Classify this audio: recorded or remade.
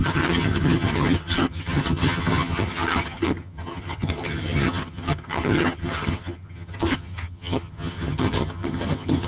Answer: remade